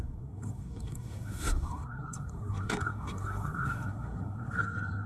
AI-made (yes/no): yes